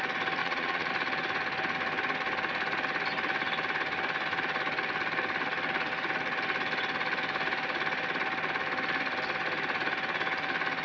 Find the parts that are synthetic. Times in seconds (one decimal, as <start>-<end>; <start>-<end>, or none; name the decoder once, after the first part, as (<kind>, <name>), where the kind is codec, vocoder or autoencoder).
0.4-0.9 (vocoder, Vocos)